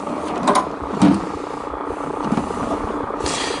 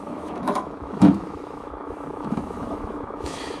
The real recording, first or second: first